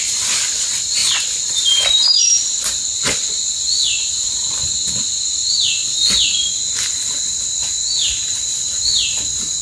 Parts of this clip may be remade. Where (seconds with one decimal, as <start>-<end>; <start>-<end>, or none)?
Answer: none